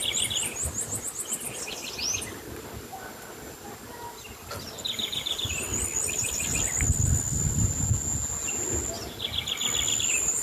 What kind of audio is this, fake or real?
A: real